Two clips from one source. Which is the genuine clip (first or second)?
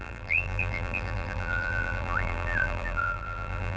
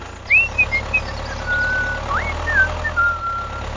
second